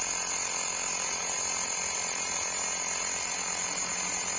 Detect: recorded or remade recorded